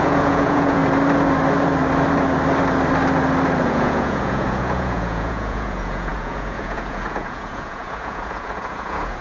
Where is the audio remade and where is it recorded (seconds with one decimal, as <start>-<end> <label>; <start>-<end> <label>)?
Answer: 0.0-0.8 remade; 0.8-3.6 recorded; 3.6-9.2 remade